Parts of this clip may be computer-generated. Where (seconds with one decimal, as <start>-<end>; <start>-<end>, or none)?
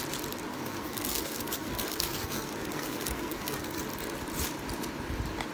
0.5-3.8